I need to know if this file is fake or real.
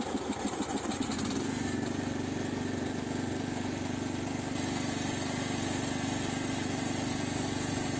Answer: real